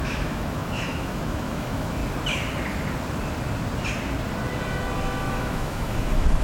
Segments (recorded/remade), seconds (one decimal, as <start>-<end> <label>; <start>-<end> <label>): 0.0-2.0 remade; 2.0-5.3 recorded; 5.3-6.4 remade